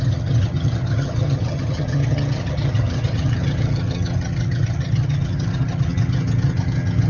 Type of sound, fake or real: fake